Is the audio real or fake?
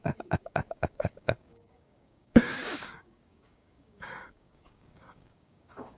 fake